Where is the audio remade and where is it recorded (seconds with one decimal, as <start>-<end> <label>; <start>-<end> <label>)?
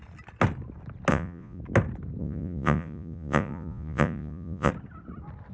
0.0-1.1 recorded; 1.1-1.6 remade; 1.6-2.2 recorded; 2.2-4.7 remade; 4.7-5.5 recorded